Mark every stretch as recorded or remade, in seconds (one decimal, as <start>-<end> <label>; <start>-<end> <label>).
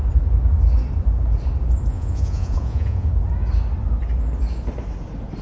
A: 0.0-1.9 recorded; 1.9-3.1 remade; 3.1-5.4 recorded